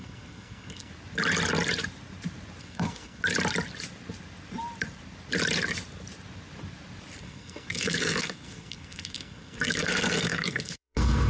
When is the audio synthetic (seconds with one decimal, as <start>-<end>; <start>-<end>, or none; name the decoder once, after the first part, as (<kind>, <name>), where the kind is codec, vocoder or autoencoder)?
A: 0.0-0.9 (codec, SNAC); 2.6-3.2; 7.2-11.3

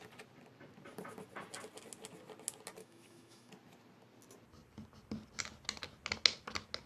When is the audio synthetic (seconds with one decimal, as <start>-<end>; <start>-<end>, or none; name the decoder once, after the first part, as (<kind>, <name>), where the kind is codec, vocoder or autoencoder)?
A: 2.8-3.5 (autoencoder, DAC-VAE)

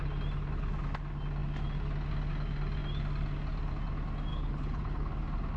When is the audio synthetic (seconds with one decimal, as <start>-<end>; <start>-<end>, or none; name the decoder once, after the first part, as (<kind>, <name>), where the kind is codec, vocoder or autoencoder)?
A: 4.3-5.1 (codec, HILCodec)

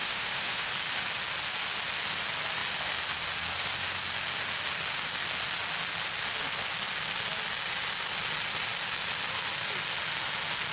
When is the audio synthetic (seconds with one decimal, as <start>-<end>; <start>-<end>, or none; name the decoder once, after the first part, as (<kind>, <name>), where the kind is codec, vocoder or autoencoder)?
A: 0.0-0.7 (autoencoder, DAC-VAE)

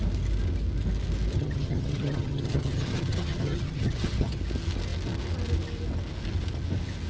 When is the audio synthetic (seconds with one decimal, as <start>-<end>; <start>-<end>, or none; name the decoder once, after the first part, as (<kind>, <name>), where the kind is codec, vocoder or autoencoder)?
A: 1.3-4.4 (vocoder, HiFi-GAN)